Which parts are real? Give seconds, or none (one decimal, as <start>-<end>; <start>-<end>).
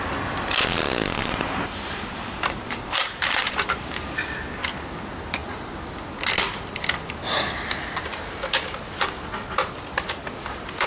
0.0-1.2; 3.9-10.9